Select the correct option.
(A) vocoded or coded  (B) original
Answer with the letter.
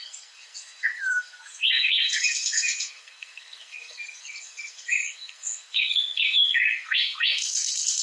A